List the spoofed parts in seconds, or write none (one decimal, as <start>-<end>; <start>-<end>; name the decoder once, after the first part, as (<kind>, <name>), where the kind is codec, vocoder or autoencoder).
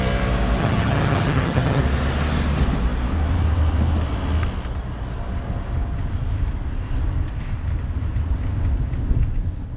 0.6-1.8 (vocoder, HiFi-GAN)